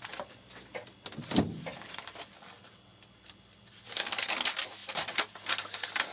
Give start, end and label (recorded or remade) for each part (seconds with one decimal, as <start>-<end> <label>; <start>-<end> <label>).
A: 0.0-6.1 recorded